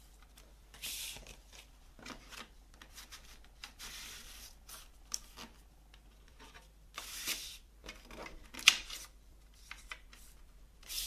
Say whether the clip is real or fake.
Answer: fake